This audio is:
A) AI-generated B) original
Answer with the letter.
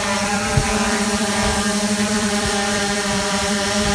A